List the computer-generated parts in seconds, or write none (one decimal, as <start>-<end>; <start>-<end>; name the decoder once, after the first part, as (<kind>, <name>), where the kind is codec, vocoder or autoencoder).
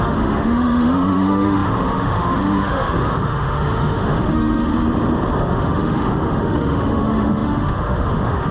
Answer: 0.0-4.7 (autoencoder, DAC-VAE); 5.4-8.5